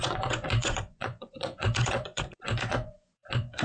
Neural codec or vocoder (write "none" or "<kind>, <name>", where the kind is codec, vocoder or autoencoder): vocoder, Vocos